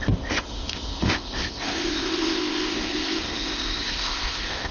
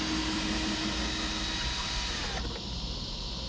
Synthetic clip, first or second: first